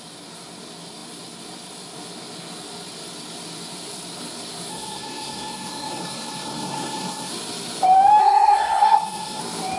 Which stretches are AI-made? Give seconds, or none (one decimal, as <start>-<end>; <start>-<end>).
4.7-7.3; 8.2-9.4